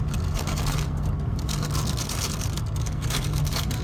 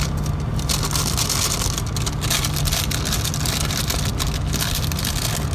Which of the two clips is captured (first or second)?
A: second